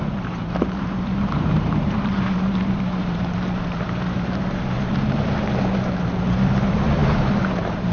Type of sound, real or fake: fake